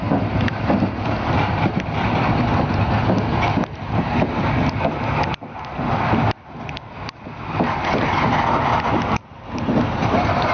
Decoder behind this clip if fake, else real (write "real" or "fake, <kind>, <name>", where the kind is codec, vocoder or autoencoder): real